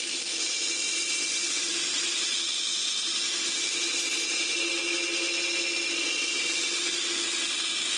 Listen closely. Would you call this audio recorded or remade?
recorded